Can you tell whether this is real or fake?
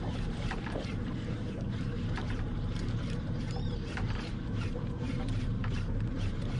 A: fake